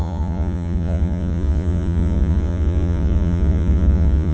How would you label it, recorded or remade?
remade